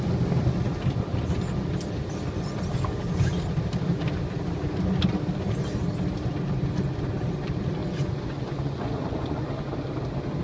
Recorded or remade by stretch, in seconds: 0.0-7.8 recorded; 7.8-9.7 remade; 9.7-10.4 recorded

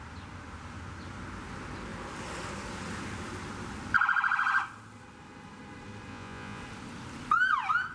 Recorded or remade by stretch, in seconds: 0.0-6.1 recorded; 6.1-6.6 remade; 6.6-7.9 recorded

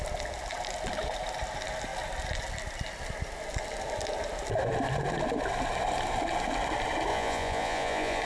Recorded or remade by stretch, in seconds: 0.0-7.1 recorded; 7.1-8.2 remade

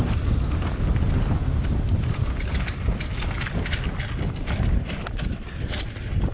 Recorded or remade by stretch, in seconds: 0.0-6.3 recorded